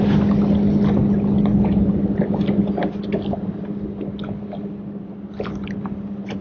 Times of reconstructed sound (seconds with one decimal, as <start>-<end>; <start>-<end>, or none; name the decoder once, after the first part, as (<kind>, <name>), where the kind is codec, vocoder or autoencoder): none